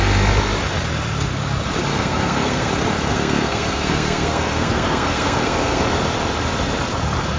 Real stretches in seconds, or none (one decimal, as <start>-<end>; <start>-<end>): 0.0-1.9; 2.7-3.1; 5.8-7.4